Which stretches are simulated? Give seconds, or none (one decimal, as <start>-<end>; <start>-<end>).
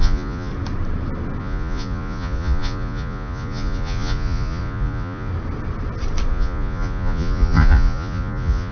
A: 0.0-0.5; 1.4-5.3; 6.3-8.7